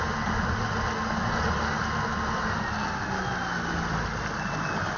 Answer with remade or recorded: recorded